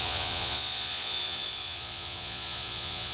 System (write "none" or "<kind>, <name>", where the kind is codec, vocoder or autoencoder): vocoder, Vocos